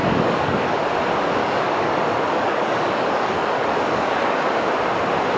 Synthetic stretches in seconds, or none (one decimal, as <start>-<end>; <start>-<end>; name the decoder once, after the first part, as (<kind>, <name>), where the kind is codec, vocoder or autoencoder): 0.0-0.8 (codec, DAC); 1.4-4.6